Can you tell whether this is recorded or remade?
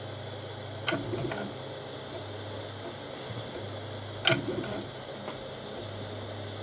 recorded